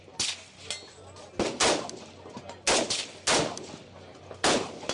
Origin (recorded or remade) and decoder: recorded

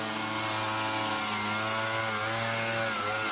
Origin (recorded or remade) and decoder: recorded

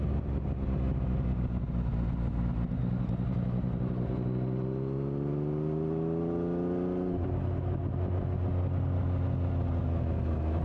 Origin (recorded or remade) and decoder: recorded